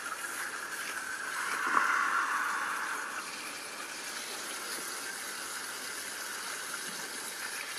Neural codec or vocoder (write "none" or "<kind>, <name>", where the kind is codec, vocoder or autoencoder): none